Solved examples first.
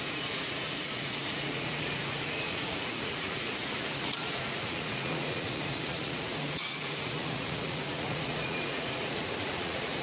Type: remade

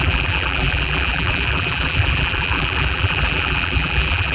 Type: remade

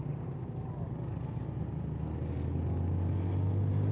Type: recorded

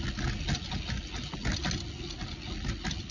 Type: recorded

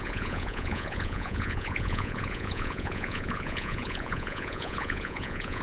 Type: remade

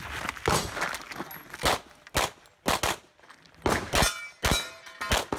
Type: recorded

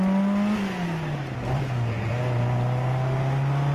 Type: recorded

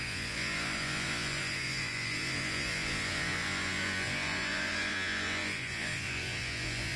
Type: remade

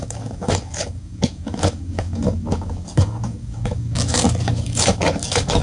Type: remade